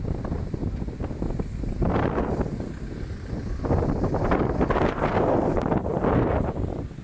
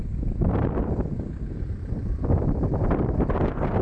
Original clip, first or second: first